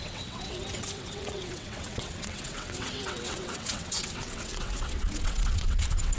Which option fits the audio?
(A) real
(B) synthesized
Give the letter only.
B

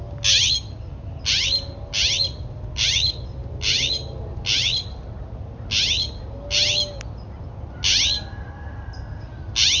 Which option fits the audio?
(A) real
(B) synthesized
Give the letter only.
A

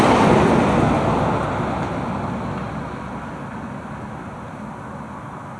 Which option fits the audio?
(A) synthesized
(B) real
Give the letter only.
B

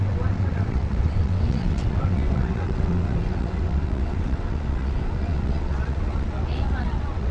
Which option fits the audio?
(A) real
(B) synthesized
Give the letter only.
B